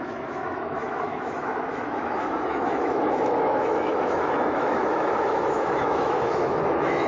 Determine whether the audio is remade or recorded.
remade